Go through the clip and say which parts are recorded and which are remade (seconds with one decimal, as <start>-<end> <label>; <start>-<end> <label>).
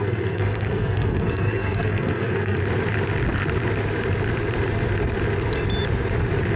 0.0-2.6 remade; 2.6-6.6 recorded